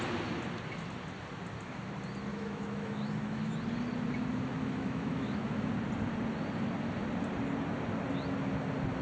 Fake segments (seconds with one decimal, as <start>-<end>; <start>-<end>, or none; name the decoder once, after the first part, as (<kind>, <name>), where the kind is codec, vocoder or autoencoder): 2.3-3.5 (autoencoder, DAC-VAE); 4.5-5.7

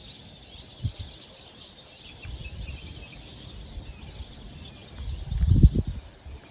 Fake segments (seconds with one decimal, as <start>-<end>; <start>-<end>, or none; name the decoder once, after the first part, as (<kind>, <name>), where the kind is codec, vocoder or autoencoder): none